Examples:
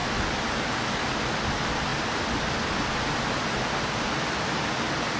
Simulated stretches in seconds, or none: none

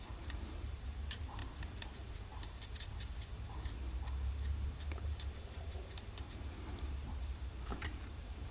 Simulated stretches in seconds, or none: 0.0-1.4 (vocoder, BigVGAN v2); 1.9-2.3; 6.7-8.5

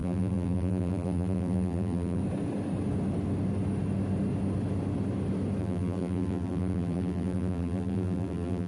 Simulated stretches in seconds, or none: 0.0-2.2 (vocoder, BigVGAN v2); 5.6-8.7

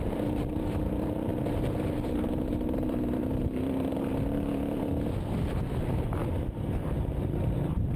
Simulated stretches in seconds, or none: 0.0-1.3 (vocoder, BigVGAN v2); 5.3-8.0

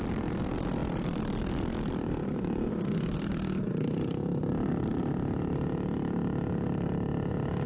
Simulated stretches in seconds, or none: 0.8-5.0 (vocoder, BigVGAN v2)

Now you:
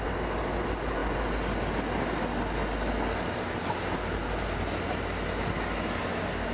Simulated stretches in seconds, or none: none